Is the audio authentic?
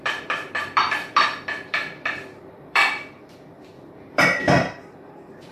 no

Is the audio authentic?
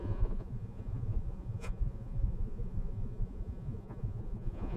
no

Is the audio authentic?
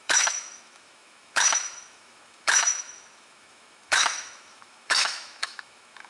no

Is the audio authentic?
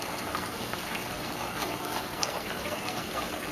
no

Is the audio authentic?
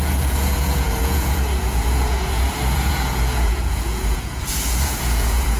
no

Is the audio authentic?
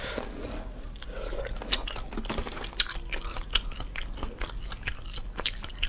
yes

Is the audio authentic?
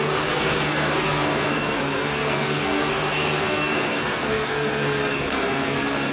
no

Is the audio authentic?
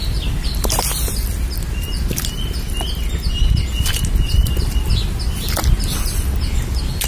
yes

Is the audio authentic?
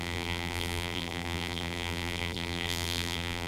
no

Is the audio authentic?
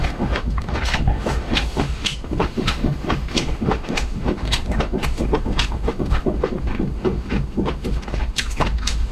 no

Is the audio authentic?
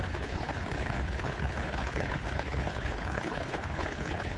no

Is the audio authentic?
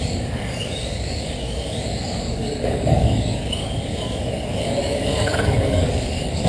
no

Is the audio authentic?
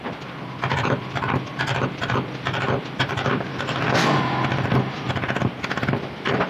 yes